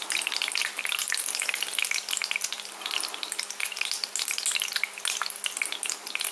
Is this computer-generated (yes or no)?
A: no